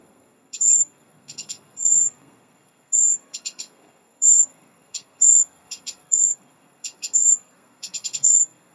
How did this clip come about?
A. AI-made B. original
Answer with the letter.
A